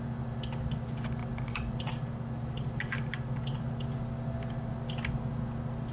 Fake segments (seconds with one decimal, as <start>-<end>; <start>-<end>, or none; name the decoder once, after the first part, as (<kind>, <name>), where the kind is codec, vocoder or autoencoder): none